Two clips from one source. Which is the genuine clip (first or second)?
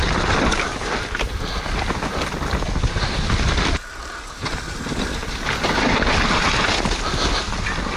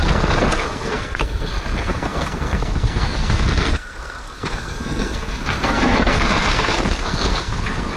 first